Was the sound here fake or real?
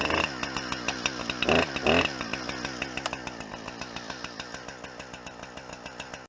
real